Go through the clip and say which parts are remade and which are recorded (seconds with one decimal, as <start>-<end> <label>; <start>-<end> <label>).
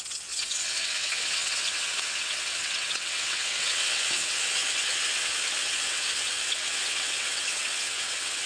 0.0-8.5 remade